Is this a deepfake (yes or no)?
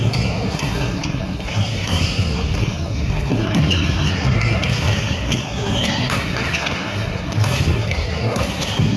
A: yes